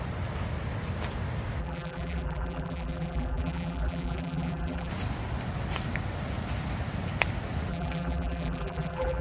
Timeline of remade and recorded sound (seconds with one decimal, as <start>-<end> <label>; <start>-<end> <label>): 0.0-1.6 recorded; 1.6-4.9 remade; 4.9-7.7 recorded; 7.7-9.2 remade